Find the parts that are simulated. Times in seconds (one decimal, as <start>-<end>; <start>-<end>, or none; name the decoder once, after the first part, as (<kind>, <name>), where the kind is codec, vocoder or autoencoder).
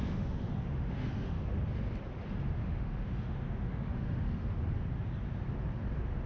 0.0-1.5 (autoencoder, DAC-VAE); 2.6-4.6